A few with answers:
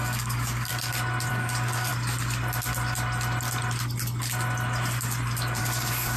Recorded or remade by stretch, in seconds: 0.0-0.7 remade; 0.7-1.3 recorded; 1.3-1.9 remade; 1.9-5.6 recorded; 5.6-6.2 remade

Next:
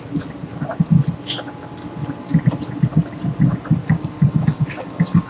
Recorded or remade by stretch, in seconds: 0.0-3.8 recorded; 3.8-5.3 remade

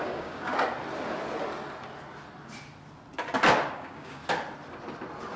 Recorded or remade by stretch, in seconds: 0.0-0.5 remade; 0.5-3.7 recorded; 3.7-4.2 remade; 4.2-5.4 recorded

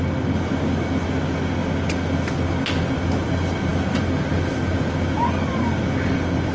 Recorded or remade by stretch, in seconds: 0.0-6.5 recorded

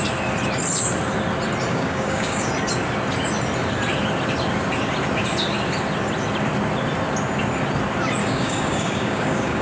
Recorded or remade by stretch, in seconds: 0.0-1.7 recorded; 1.7-2.5 remade; 2.5-8.2 recorded; 8.2-9.6 remade

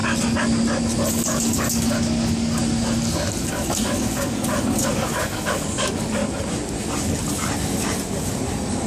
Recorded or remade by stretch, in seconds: 0.0-1.1 recorded; 1.1-2.6 remade; 2.6-3.5 recorded; 3.5-6.2 remade; 6.2-8.9 recorded

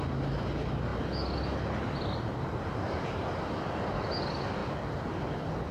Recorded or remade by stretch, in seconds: 0.0-5.7 recorded

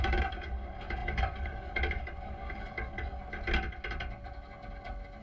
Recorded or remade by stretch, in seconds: 0.0-3.2 remade; 3.2-5.2 recorded